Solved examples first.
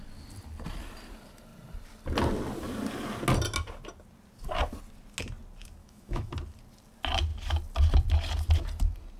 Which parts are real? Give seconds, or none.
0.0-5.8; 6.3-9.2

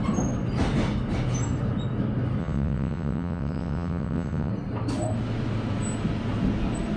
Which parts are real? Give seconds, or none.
0.0-2.4; 4.5-7.0

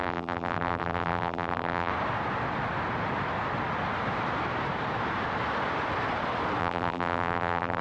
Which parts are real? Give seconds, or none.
1.9-6.6

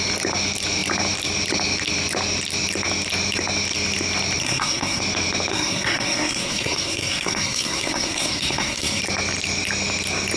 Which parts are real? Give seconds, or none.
0.0-4.4; 5.0-5.5; 9.0-10.4

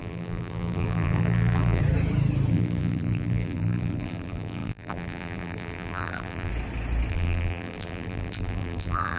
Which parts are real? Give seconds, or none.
1.8-2.5; 6.5-7.1